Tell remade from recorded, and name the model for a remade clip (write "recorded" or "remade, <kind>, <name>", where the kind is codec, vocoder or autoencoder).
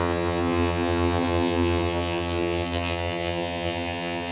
remade, vocoder, HiFi-GAN